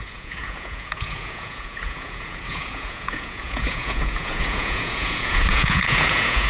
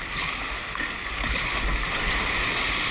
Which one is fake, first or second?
first